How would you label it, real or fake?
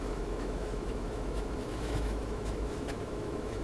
fake